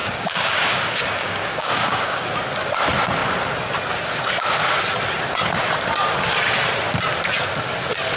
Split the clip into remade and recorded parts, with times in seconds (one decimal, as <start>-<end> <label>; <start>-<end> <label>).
0.0-2.3 remade; 2.3-8.2 recorded